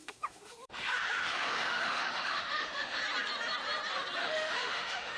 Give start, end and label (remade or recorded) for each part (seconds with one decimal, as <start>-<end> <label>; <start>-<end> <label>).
0.0-3.0 remade; 3.0-4.2 recorded; 4.2-5.2 remade

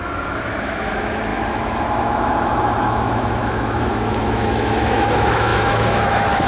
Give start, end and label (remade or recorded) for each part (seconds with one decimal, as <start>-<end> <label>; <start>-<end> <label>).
0.0-6.5 remade

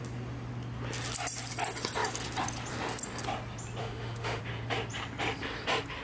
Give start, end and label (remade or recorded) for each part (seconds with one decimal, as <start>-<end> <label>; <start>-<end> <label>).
0.0-3.8 recorded; 3.8-4.4 remade; 4.4-6.0 recorded